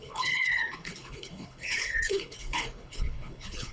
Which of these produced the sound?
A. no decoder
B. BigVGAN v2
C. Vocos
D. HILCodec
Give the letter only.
D